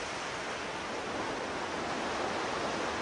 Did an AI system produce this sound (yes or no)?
no